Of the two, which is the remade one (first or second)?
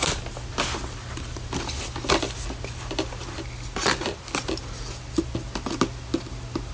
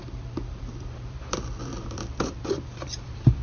second